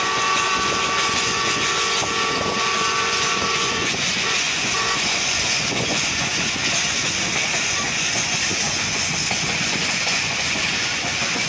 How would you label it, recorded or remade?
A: remade